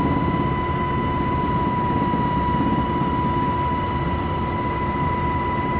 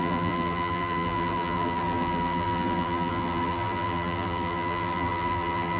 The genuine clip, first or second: first